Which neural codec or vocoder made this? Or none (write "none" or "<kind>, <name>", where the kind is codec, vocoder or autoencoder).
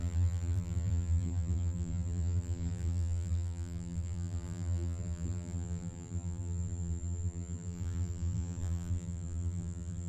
vocoder, BigVGAN v2